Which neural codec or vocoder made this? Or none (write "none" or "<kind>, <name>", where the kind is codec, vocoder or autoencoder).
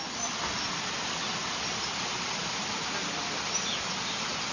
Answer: none